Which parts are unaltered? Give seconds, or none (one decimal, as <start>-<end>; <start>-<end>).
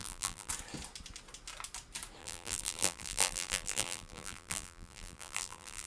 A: 0.5-2.2